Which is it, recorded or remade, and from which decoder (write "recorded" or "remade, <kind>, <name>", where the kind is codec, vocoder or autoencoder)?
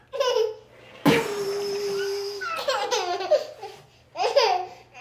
recorded